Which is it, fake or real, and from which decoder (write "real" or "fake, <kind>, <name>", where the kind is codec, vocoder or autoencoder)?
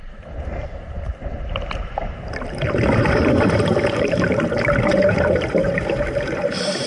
fake, vocoder, BigVGAN v2